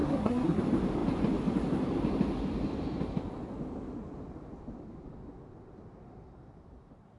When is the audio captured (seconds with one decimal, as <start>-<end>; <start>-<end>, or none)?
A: 0.6-7.2